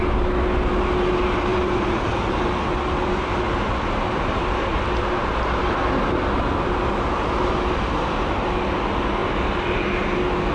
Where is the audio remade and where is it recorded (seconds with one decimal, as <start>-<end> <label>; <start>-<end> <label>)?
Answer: 0.0-1.5 recorded; 1.5-3.3 remade; 3.3-9.2 recorded; 9.2-9.9 remade; 9.9-10.5 recorded